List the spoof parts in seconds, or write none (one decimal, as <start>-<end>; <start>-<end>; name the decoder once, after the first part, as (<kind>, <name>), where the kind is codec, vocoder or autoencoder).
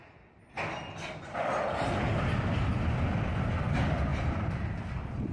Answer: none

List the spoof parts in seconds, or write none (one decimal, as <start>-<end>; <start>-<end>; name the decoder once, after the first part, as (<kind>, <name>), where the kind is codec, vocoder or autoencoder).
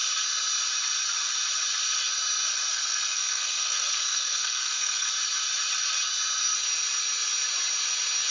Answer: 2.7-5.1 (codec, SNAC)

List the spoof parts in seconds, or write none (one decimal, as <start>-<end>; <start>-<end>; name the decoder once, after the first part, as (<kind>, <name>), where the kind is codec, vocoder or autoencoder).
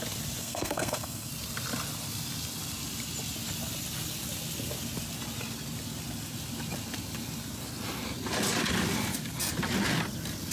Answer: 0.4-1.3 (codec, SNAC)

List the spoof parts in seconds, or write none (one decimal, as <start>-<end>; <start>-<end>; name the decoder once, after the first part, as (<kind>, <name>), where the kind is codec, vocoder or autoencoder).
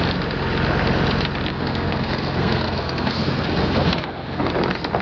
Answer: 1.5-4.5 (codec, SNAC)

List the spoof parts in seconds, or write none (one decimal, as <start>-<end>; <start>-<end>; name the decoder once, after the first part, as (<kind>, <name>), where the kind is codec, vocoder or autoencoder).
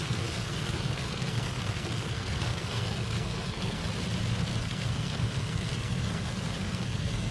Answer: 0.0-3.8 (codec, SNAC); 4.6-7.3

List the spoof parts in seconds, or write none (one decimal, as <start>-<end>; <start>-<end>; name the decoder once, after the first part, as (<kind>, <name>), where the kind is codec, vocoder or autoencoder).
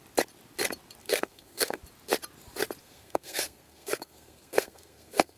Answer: 1.0-1.8 (codec, SNAC); 2.8-5.4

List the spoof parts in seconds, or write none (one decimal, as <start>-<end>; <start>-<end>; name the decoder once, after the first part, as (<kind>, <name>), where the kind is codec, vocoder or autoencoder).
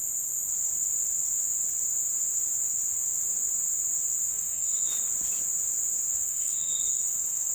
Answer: 4.3-4.9 (codec, SNAC); 6.1-7.5